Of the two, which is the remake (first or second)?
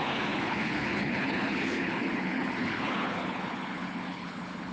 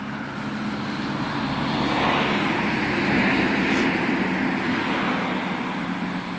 first